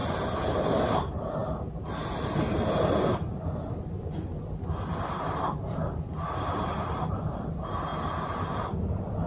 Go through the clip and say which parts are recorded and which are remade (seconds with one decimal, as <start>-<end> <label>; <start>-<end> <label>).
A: 0.0-9.3 recorded